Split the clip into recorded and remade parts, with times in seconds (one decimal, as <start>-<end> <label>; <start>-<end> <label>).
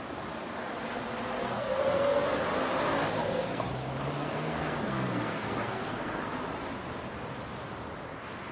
0.0-1.4 recorded; 1.4-2.2 remade; 2.2-3.2 recorded; 3.2-3.7 remade; 3.7-4.2 recorded; 4.2-6.3 remade; 6.3-8.5 recorded